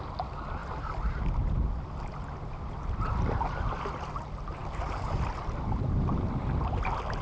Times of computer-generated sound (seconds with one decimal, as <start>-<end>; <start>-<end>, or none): none